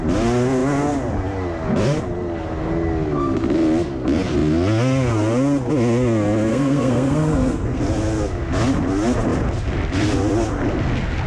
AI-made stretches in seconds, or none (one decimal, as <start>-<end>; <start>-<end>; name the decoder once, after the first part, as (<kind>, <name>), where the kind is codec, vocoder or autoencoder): 6.5-7.8 (codec, SNAC)